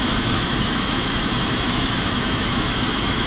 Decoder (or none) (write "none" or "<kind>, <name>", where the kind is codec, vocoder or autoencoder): autoencoder, DAC-VAE